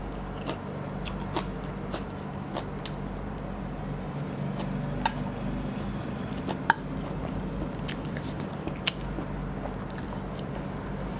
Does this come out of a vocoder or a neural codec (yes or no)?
no